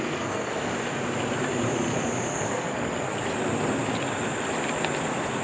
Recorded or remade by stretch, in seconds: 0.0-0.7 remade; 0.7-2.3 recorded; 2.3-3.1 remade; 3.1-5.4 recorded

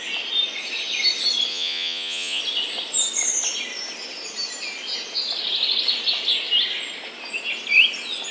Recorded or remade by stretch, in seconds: 0.0-1.5 recorded; 1.5-2.4 remade; 2.4-8.3 recorded

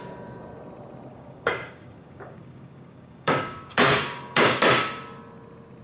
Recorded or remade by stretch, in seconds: 0.0-1.1 recorded; 1.1-4.6 remade; 4.6-5.8 recorded

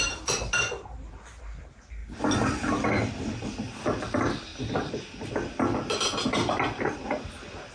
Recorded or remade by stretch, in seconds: 0.0-7.7 recorded

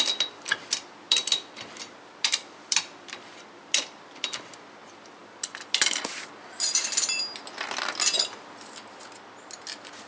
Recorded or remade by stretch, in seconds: 0.0-1.2 remade; 1.2-1.7 recorded; 1.7-5.2 remade; 5.2-10.1 recorded

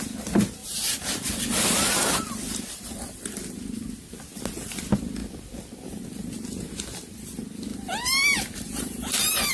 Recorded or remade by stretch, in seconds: 0.0-0.6 recorded; 0.6-1.6 remade; 1.6-7.7 recorded; 7.7-9.5 remade

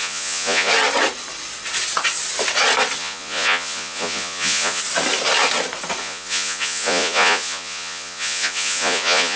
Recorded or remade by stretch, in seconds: 0.0-0.7 remade; 0.7-3.0 recorded; 3.0-4.8 remade; 4.8-6.0 recorded; 6.0-9.4 remade

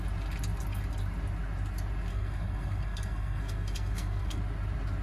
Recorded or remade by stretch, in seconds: 0.0-2.1 recorded; 2.1-4.4 remade; 4.4-5.0 recorded